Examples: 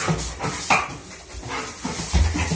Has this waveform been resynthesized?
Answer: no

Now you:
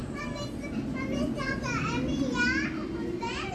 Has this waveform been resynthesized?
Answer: no